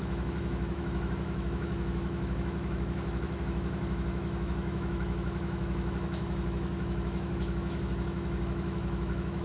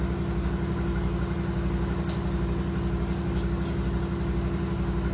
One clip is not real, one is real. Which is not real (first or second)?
first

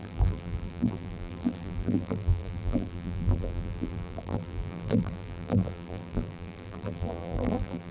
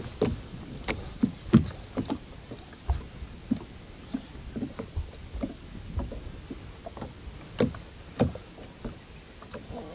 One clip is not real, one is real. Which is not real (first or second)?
first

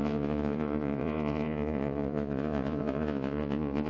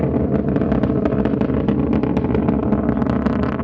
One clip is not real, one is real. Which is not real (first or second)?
first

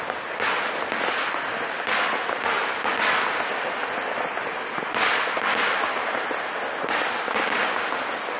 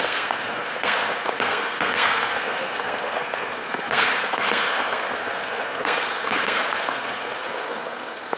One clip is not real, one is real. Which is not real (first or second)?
second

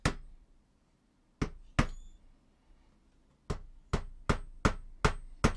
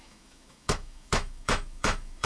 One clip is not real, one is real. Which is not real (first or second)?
second